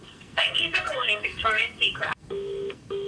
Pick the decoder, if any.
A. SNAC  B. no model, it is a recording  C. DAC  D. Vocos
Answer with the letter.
A